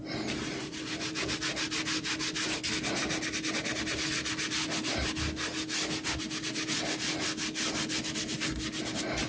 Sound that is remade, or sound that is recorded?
recorded